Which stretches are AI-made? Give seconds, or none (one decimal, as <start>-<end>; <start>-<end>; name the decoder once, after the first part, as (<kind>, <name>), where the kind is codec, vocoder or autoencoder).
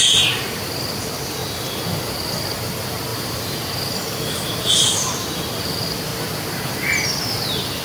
none